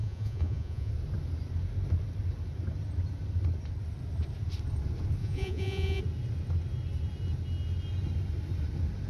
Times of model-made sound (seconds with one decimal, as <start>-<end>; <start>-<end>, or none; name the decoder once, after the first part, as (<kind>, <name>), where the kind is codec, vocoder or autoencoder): 0.0-0.9 (vocoder, Vocos); 5.2-6.0